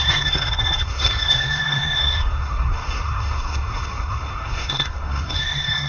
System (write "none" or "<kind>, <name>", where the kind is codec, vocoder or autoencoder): codec, SNAC